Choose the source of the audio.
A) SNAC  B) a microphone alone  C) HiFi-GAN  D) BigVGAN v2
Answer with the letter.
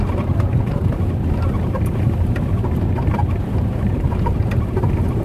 D